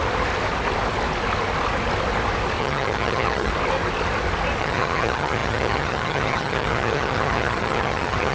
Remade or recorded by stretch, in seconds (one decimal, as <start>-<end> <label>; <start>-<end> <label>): 0.0-2.6 recorded; 2.6-3.5 remade; 3.5-4.6 recorded; 4.6-8.3 remade